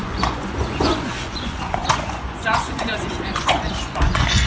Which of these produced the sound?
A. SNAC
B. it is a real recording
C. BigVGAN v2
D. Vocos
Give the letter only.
D